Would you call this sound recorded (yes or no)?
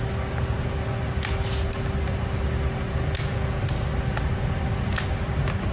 yes